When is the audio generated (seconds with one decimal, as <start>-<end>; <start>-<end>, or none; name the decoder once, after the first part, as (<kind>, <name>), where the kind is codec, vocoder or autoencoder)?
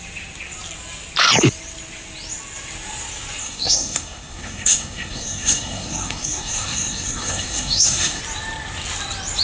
3.4-8.2 (codec, SNAC)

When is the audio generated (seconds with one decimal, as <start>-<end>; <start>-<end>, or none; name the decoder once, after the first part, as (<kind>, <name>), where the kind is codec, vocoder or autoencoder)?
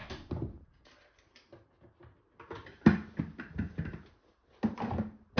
none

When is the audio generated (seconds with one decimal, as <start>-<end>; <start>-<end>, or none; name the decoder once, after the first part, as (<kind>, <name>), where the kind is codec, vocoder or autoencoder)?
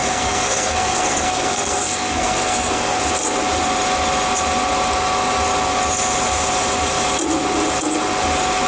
0.0-3.0 (codec, SNAC)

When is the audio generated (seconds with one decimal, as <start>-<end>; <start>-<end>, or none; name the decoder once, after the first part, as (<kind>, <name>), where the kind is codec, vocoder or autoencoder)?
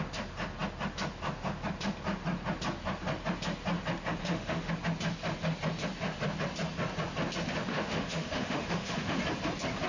4.2-4.7 (autoencoder, DAC-VAE); 7.7-9.2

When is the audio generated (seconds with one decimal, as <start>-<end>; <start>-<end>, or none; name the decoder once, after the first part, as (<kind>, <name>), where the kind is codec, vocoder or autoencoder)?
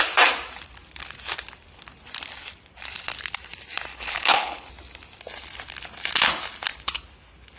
3.9-4.7 (codec, HILCodec)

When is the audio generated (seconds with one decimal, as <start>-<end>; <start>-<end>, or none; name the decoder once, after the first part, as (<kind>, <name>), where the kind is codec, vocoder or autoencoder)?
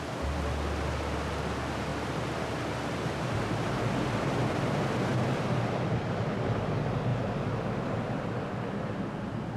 1.9-2.6 (vocoder, BigVGAN v2); 5.1-6.0; 7.1-8.0